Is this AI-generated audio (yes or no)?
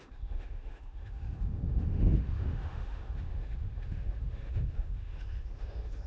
yes